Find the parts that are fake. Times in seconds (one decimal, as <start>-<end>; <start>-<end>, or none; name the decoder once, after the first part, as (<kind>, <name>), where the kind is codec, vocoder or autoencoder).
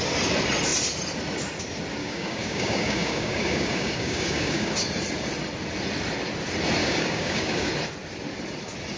2.0-4.7 (codec, DAC); 6.8-7.7